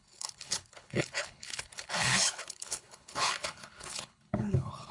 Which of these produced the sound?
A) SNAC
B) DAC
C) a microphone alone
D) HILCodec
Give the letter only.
D